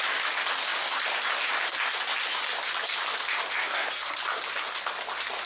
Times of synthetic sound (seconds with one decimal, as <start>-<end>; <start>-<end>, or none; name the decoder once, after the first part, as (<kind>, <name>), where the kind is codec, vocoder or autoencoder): 3.6-4.2 (codec, SNAC)